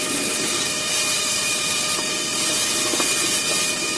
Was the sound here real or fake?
real